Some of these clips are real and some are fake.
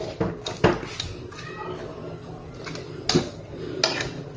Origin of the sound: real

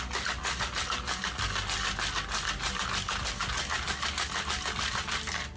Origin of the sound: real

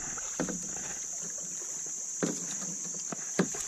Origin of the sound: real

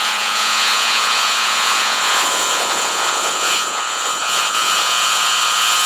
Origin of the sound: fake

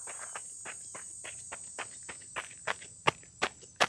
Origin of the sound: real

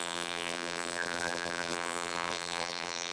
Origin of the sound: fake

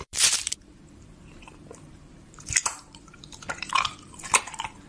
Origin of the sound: fake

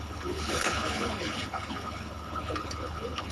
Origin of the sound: fake